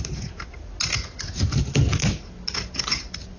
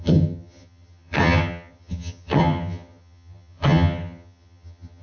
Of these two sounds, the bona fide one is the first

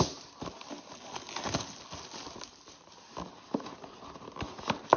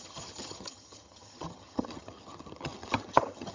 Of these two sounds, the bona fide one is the first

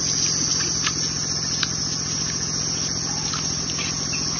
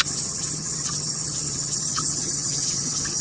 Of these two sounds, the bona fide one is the first